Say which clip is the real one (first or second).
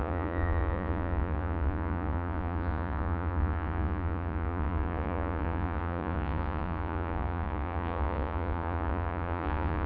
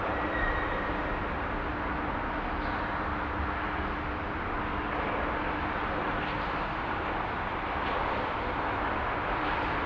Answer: second